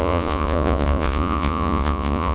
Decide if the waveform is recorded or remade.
remade